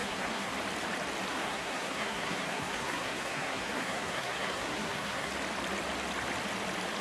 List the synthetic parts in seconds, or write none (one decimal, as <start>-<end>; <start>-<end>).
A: 0.0-0.5; 1.3-5.3